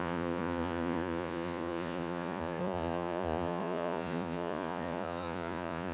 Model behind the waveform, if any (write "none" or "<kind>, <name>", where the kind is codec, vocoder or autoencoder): vocoder, Vocos